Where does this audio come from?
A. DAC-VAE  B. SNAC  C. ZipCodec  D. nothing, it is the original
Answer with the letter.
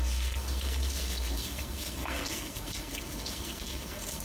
B